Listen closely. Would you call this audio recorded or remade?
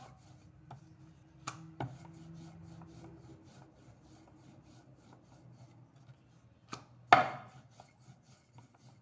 recorded